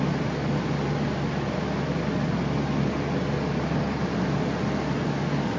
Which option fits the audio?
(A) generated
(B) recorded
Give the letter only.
B